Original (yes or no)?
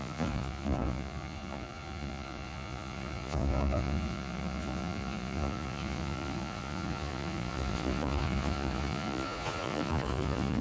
no